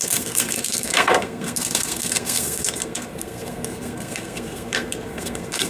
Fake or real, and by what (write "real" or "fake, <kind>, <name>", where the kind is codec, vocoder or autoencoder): fake, codec, SNAC